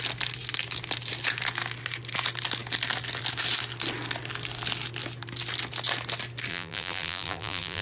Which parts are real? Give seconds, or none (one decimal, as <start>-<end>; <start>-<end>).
0.0-6.5